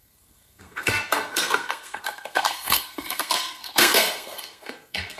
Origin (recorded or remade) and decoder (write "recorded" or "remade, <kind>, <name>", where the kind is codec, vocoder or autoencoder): remade, codec, SNAC